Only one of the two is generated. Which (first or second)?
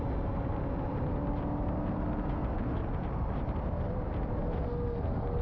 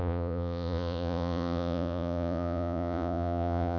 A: second